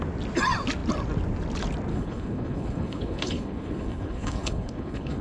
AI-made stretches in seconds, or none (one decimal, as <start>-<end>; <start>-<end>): 1.9-5.2